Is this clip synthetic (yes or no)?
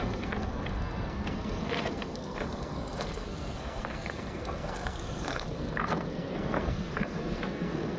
yes